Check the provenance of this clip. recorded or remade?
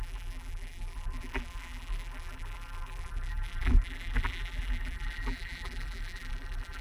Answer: remade